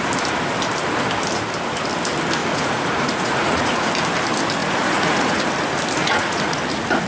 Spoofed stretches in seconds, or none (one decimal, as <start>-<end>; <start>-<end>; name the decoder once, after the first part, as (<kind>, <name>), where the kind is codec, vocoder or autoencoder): 2.4-3.9 (vocoder, Vocos); 4.6-5.4; 6.0-6.6